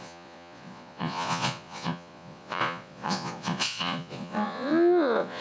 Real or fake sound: fake